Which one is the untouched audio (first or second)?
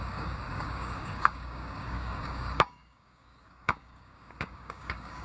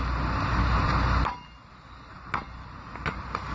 second